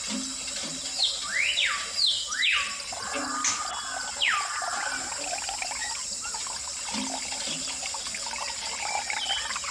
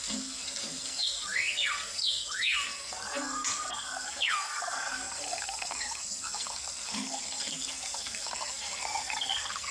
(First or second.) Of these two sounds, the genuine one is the first